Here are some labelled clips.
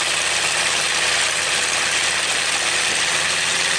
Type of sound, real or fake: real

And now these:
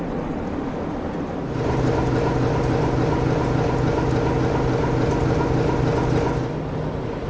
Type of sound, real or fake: real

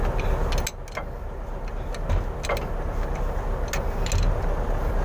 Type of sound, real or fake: real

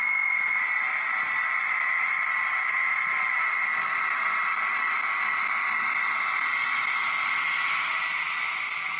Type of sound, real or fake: real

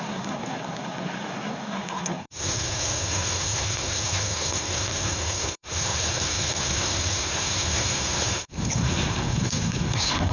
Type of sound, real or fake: fake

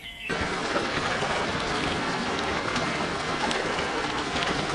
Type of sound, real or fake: fake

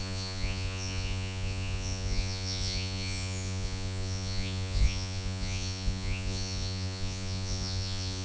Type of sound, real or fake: fake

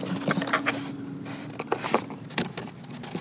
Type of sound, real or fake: real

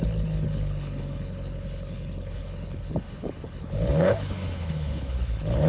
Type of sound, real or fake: fake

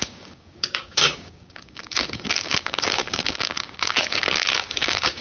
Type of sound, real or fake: fake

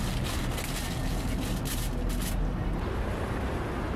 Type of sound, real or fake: real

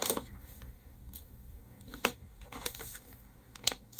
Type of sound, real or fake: fake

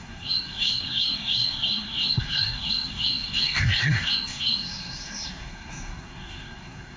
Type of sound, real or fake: fake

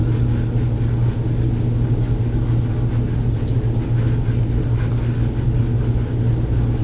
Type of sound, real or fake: real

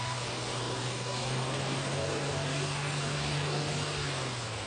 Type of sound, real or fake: fake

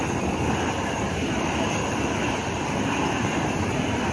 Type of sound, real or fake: fake